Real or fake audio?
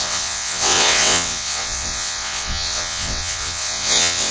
fake